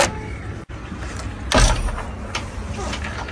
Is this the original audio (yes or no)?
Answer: yes